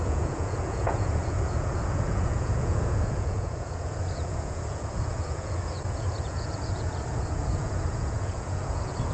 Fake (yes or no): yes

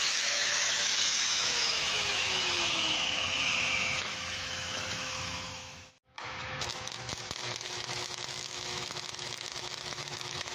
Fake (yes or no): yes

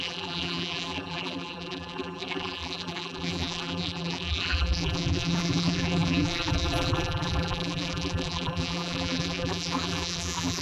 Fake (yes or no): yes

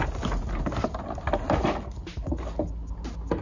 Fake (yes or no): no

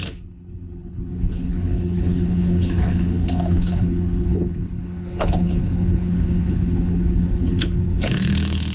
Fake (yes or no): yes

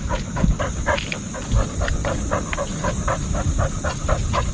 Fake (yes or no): no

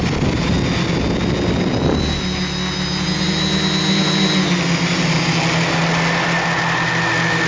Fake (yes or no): no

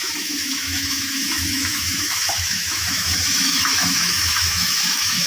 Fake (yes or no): yes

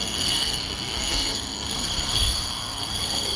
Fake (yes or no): yes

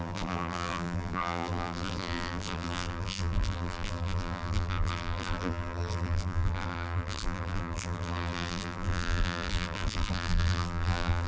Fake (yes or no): yes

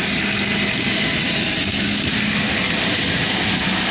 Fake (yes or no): no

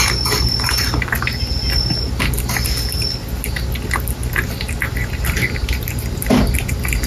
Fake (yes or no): no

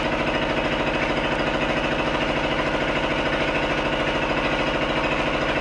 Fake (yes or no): no